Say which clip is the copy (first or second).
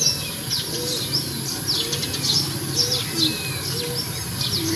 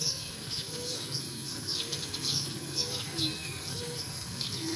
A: second